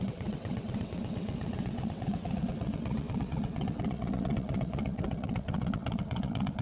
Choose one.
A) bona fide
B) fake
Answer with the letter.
B